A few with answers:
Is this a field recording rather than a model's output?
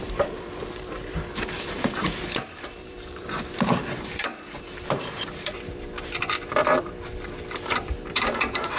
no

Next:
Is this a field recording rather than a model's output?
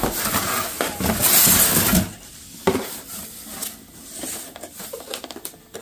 yes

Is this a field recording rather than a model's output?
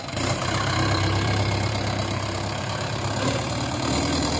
no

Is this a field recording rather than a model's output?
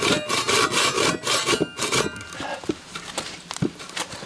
yes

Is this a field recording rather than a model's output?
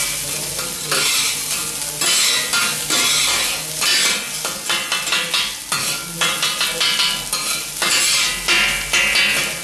yes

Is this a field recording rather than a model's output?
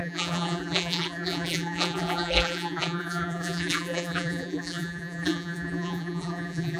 no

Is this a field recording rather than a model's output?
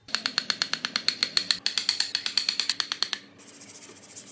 yes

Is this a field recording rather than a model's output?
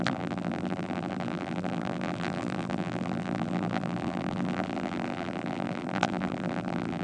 no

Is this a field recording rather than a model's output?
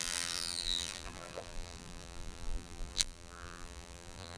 no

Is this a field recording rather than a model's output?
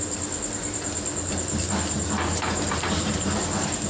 no